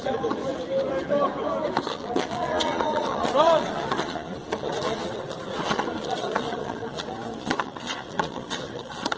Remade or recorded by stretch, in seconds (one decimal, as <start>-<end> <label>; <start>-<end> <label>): 0.0-0.4 remade; 0.4-1.8 recorded; 1.8-9.2 remade